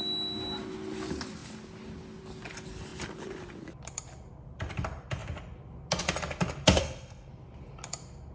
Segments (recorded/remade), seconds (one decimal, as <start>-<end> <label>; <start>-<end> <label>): 0.0-6.8 recorded; 6.8-7.3 remade; 7.3-8.3 recorded